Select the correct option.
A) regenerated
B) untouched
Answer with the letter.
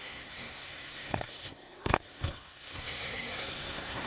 A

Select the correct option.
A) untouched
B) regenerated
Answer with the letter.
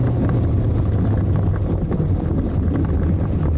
A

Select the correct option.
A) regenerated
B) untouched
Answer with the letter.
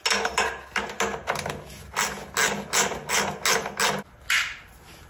B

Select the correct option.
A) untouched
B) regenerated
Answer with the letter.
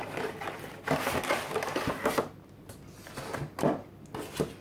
A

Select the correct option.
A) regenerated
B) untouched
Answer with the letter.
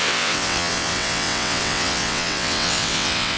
A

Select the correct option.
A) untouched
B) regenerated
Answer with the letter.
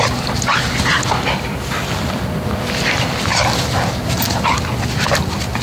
A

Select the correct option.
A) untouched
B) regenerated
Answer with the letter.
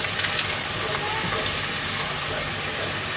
A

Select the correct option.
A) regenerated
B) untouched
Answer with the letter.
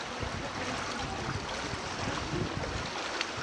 B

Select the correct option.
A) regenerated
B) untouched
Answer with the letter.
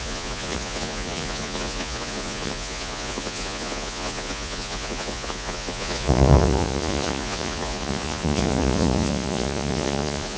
A